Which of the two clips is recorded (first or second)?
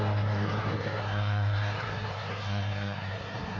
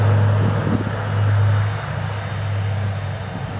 second